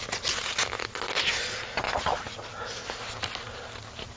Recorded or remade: recorded